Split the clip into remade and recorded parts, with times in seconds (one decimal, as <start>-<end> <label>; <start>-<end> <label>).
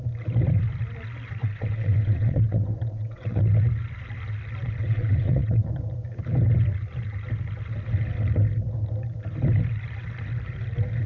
0.0-1.4 recorded; 1.4-3.5 remade; 3.5-4.8 recorded; 4.8-5.7 remade; 5.7-11.1 recorded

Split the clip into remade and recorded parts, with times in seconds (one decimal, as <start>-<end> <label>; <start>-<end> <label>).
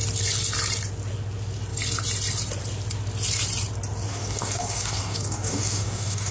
0.0-4.1 recorded; 4.1-6.3 remade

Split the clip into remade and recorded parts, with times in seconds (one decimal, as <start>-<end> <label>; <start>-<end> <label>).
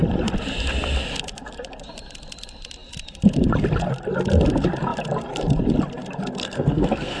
0.0-6.4 recorded; 6.4-7.2 remade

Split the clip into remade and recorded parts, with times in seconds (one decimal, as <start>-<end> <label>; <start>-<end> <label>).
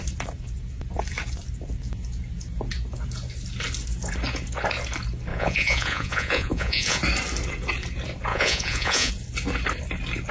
0.0-5.3 recorded; 5.3-7.0 remade; 7.0-8.3 recorded; 8.3-9.1 remade; 9.1-10.3 recorded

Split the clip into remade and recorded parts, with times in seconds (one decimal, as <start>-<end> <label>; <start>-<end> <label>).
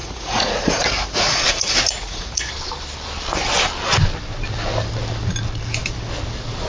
0.0-2.5 remade; 2.5-6.7 recorded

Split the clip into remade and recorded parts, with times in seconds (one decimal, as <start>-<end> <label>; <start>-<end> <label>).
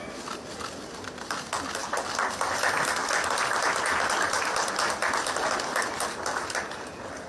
0.0-7.3 recorded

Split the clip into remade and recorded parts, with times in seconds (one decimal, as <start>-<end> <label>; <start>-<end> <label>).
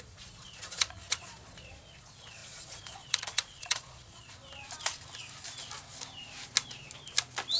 0.0-4.4 remade; 4.4-7.6 recorded